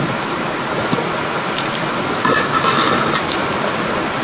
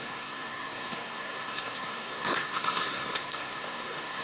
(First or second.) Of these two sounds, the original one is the first